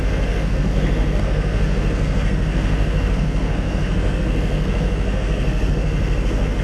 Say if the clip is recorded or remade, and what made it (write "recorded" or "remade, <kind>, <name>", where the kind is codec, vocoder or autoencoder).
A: remade, codec, SNAC